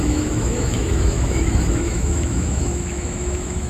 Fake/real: fake